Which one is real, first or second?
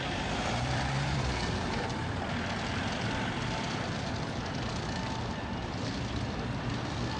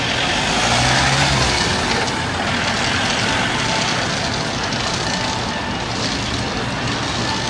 second